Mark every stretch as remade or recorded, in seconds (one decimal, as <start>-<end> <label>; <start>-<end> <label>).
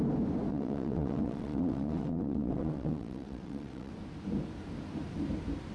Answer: 0.0-0.5 recorded; 0.5-3.9 remade; 3.9-5.7 recorded